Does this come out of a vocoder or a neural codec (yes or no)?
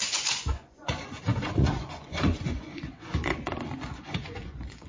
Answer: yes